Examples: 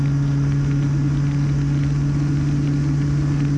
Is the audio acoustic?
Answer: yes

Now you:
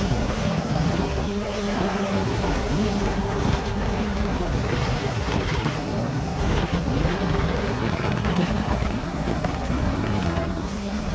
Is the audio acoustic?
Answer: no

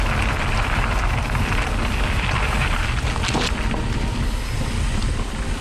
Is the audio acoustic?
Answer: yes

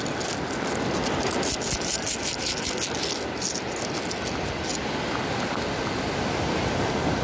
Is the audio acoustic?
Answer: yes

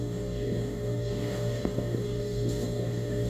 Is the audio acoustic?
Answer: no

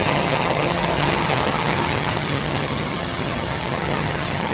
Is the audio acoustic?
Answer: no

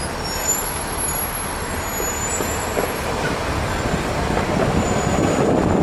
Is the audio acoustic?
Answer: yes